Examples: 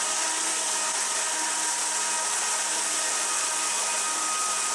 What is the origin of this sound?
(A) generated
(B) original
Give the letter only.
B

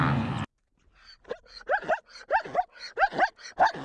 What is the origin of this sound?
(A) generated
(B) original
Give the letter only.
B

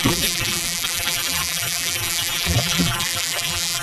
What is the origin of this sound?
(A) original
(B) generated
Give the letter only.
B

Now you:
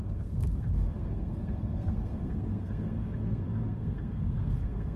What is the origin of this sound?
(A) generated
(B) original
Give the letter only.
A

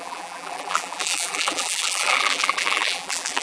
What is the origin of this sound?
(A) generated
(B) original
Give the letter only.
A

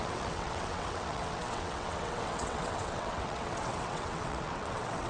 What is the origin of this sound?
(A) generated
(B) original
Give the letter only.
A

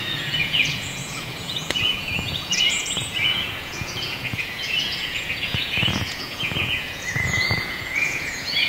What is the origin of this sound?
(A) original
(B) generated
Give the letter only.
B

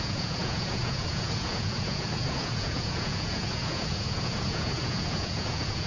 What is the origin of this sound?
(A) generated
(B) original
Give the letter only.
A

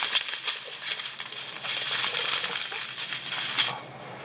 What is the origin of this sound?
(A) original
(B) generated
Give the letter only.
A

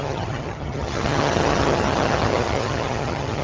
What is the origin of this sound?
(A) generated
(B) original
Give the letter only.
A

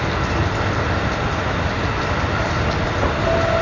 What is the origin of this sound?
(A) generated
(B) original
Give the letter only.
B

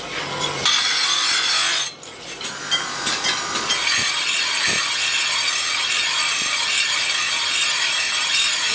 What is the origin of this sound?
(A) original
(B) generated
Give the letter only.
B